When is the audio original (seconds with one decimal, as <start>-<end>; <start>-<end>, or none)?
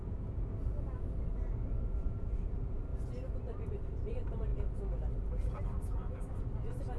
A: 2.9-3.7; 4.5-5.1